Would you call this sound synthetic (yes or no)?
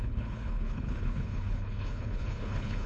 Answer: yes